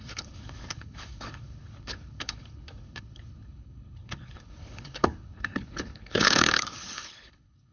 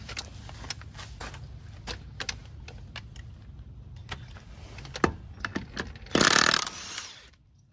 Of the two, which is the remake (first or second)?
first